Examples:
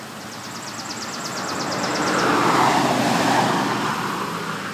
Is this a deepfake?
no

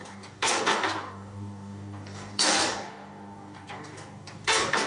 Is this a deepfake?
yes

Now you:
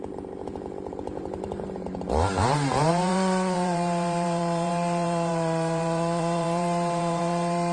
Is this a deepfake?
yes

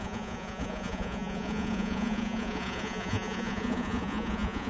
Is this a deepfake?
yes